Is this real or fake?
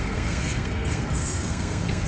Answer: fake